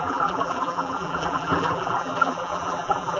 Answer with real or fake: fake